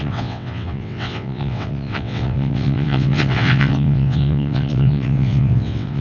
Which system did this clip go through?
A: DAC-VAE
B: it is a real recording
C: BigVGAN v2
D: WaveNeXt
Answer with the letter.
D